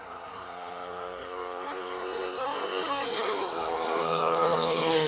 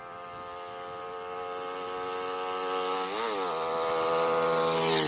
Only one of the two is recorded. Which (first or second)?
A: second